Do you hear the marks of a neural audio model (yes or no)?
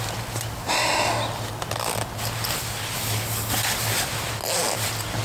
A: no